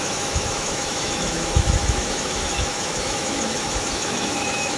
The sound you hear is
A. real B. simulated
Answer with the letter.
B